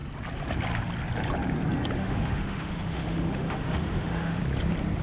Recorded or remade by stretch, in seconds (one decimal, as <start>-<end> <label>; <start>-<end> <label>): 0.0-2.0 recorded; 2.0-4.4 remade; 4.4-5.0 recorded